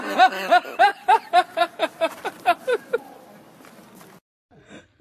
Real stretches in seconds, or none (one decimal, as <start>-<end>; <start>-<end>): 0.0-0.9; 3.9-5.0